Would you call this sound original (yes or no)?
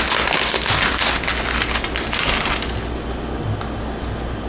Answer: yes